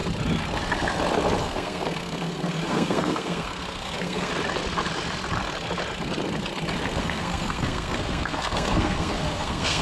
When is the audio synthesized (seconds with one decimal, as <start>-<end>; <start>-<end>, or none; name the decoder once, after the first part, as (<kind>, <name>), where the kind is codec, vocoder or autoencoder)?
1.4-4.3 (codec, SNAC); 7.0-9.8